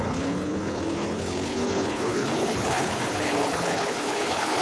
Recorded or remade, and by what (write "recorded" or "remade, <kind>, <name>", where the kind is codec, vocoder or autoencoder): remade, codec, HILCodec